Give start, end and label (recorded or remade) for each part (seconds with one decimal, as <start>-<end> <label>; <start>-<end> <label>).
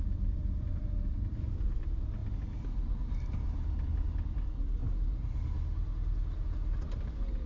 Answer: 0.0-2.2 remade; 2.2-3.7 recorded; 3.7-4.8 remade; 4.8-6.4 recorded; 6.4-7.5 remade